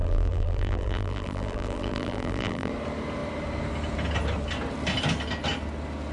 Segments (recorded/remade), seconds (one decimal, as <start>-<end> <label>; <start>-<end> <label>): 0.0-2.7 remade; 2.7-6.1 recorded